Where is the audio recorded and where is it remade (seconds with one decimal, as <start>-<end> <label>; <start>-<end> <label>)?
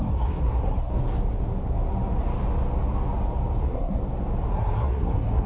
0.0-0.9 remade; 0.9-3.6 recorded; 3.6-4.0 remade; 4.0-4.5 recorded; 4.5-5.5 remade